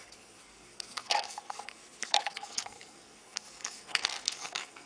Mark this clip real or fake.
fake